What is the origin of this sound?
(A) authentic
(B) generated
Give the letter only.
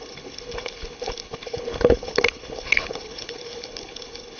B